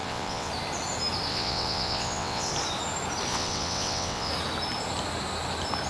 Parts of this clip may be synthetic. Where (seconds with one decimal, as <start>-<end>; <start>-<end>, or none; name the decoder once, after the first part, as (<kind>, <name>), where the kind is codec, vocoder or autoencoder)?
0.0-0.5 (vocoder, WaveNeXt); 1.3-2.5; 3.3-4.3